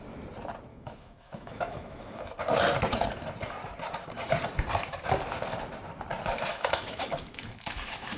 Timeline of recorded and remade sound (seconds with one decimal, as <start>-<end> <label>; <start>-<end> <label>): 0.0-0.7 recorded; 0.7-2.3 remade; 2.3-6.5 recorded; 6.5-8.2 remade